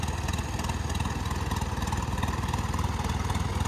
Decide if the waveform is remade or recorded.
recorded